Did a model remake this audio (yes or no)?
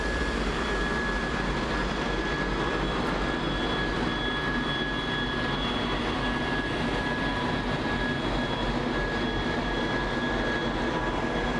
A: no